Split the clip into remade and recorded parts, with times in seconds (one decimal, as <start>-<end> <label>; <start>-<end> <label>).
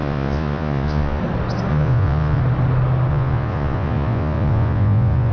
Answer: 0.0-1.2 remade; 1.2-1.7 recorded; 1.7-2.4 remade; 2.4-3.1 recorded; 3.1-5.3 remade